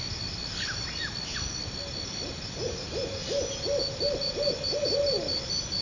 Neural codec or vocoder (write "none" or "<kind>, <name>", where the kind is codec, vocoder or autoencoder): none